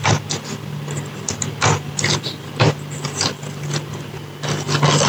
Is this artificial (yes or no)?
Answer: no